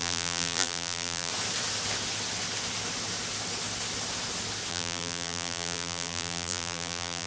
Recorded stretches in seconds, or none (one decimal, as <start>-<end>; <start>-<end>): 1.3-4.7